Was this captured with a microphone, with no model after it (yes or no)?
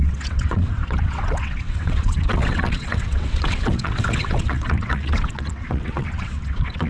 no